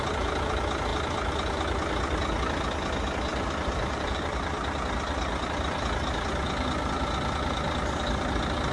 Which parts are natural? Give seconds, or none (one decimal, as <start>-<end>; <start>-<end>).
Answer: 0.0-3.3; 4.4-8.7